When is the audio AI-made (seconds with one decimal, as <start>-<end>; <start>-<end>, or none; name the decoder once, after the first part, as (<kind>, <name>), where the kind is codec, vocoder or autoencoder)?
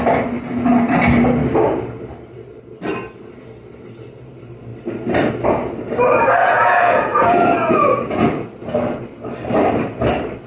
6.4-8.6 (vocoder, Vocos)